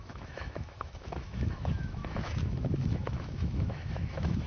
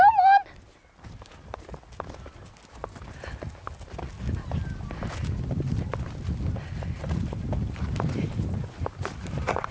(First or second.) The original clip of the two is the second